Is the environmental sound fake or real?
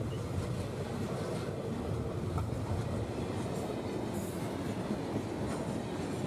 real